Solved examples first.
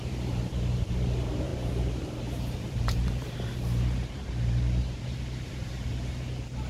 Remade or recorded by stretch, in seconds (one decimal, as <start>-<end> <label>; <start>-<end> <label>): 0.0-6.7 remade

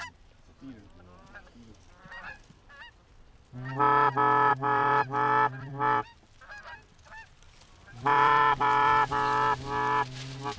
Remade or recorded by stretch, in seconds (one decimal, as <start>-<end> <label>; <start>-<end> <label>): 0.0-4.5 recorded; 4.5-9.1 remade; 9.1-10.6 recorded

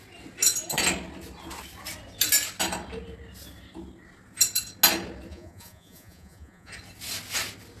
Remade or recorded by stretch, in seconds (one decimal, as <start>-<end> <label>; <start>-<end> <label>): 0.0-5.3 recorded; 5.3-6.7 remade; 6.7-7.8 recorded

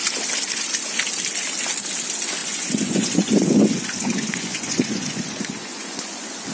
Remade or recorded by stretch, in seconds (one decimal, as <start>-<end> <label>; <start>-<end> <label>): 0.0-2.4 recorded; 2.4-6.5 remade